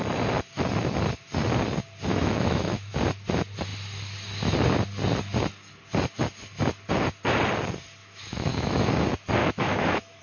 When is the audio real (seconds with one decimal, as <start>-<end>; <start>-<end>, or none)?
0.0-2.1; 2.9-8.0; 8.9-9.4